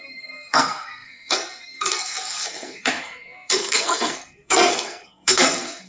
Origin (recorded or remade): remade